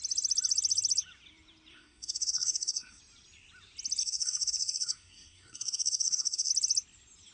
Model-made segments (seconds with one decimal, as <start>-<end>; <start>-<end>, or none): 1.7-3.0; 4.0-6.5